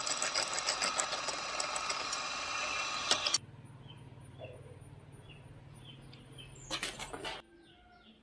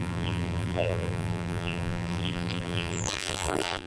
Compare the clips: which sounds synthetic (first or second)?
second